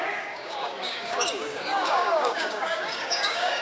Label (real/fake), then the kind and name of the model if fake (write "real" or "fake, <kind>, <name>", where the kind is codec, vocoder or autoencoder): fake, codec, DAC